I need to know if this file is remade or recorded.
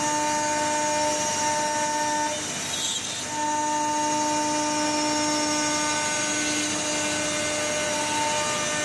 recorded